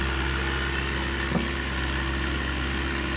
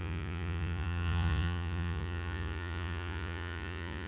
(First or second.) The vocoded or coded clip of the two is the second